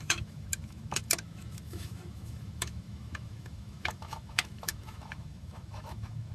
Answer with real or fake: fake